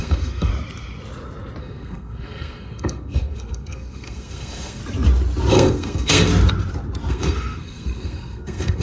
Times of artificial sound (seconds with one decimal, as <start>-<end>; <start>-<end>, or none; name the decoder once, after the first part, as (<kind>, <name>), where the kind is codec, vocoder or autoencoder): 0.0-0.5 (codec, SNAC); 1.6-4.8; 5.5-6.3; 7.1-8.8